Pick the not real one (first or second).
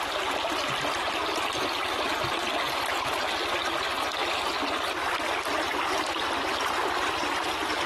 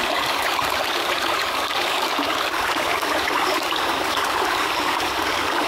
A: second